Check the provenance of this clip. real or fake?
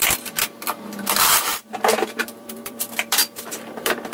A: fake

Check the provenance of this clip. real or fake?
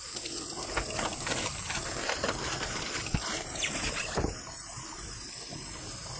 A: fake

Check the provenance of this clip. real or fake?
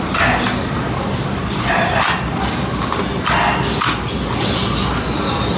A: real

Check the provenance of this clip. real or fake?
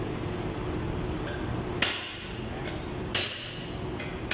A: real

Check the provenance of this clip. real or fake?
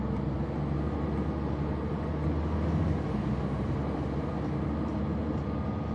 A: real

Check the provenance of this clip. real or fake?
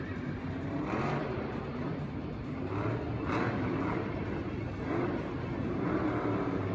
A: fake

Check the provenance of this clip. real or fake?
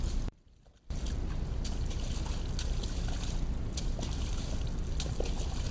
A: real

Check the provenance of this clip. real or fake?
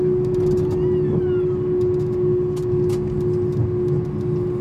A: real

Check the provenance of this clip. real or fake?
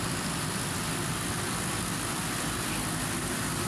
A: fake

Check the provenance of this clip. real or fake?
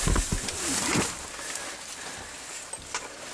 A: real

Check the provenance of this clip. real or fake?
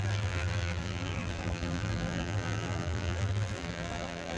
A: fake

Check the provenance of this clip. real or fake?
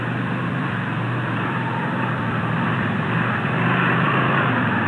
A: fake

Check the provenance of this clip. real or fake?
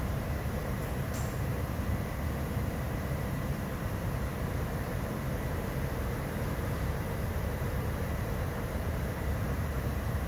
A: fake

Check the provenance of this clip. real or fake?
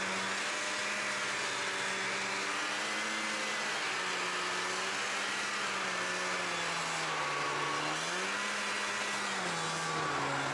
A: real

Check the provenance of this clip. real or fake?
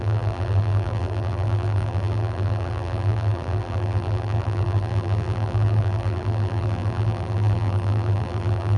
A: fake